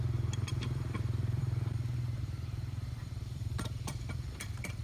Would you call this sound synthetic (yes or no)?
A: yes